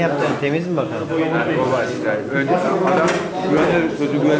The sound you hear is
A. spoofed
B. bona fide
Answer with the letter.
B